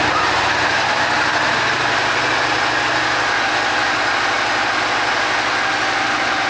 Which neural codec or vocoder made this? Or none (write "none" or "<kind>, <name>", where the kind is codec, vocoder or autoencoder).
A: none